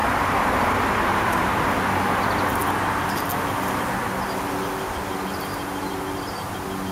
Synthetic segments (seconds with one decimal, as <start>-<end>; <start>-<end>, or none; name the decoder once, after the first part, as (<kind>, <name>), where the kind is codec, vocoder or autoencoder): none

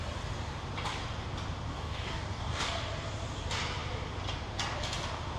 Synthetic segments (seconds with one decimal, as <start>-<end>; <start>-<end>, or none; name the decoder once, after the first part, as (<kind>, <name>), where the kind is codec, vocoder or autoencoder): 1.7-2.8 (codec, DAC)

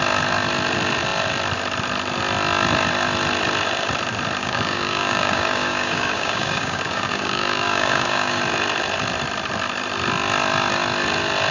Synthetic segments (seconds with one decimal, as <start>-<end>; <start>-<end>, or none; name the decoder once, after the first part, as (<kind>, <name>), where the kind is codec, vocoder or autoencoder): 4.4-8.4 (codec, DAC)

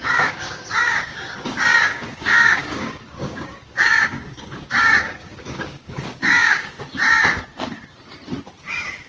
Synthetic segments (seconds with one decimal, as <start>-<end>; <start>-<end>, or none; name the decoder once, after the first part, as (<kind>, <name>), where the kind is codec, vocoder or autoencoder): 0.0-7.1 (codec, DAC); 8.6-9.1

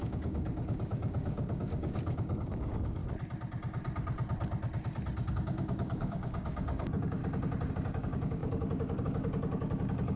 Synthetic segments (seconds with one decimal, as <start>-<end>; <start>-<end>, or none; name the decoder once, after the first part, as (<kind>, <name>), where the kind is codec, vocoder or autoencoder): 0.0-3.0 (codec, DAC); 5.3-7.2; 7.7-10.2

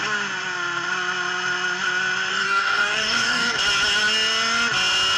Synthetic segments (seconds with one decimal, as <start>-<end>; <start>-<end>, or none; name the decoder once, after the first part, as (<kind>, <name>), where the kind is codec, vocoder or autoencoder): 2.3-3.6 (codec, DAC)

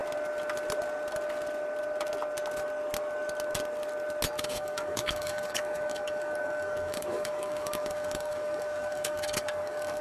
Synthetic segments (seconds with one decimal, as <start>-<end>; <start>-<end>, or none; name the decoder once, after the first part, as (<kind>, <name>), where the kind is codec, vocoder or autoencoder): 4.3-10.0 (codec, DAC)

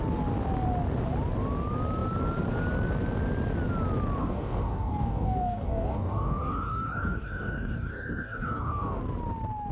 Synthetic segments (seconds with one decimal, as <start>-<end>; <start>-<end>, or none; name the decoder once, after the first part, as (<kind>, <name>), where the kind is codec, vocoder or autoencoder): 4.2-9.0 (codec, DAC)